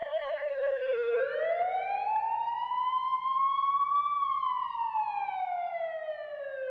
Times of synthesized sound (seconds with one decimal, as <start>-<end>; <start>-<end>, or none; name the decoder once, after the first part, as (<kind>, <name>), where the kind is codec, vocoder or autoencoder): 0.0-1.2 (codec, SNAC)